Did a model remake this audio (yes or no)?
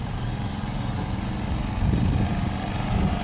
no